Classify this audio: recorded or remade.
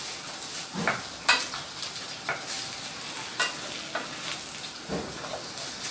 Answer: recorded